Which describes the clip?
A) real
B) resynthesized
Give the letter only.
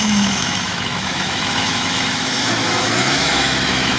B